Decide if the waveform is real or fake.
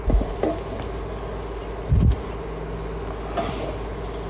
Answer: real